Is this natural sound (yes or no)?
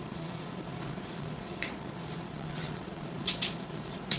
no